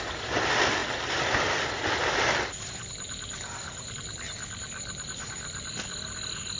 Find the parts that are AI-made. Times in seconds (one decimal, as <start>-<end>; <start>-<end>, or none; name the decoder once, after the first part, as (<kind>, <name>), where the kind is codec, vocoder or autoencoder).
none